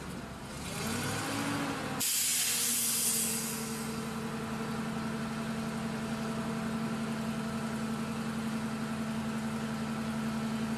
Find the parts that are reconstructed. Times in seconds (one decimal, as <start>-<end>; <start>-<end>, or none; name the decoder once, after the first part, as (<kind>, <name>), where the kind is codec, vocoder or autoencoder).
none